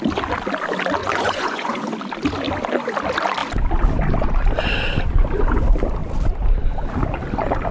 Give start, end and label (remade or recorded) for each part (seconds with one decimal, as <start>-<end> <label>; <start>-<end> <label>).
0.0-1.0 recorded; 1.0-1.9 remade; 1.9-7.7 recorded